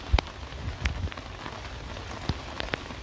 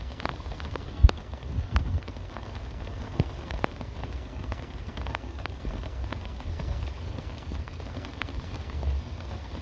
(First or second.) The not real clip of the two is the second